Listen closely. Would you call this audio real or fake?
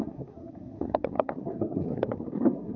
fake